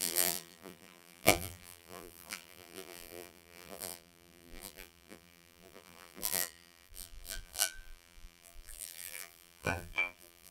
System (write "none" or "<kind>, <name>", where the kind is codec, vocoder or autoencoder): vocoder, BigVGAN v2